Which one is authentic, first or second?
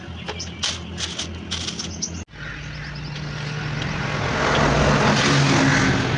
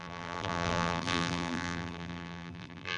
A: first